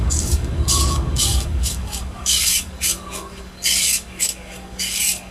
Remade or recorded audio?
remade